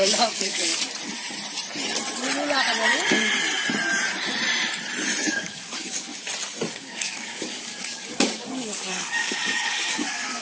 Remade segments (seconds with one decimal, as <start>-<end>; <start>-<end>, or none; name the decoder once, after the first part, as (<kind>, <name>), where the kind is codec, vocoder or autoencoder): 0.0-0.7 (codec, DAC); 5.3-6.1; 6.7-10.4